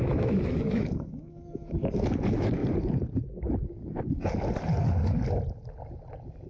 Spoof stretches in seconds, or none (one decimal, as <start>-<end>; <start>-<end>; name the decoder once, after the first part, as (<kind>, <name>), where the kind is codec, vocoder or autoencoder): 0.0-2.6 (autoencoder, DAC-VAE)